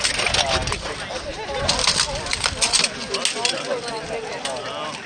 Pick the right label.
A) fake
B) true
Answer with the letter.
B